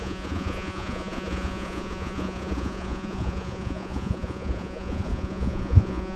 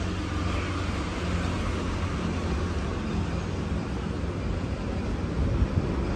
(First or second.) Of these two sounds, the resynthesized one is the first